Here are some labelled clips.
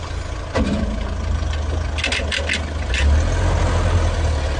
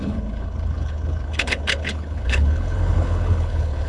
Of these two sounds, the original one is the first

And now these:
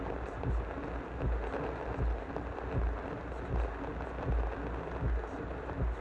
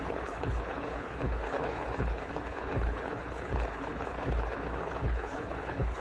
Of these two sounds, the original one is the first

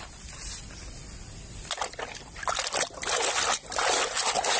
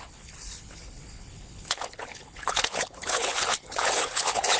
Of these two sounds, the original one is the first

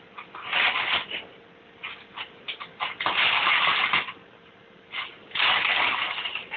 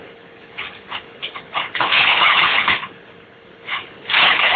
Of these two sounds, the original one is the first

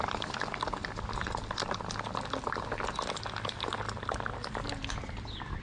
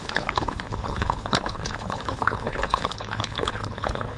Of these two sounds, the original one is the first